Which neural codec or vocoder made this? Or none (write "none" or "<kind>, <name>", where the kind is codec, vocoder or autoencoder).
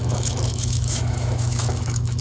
autoencoder, DAC-VAE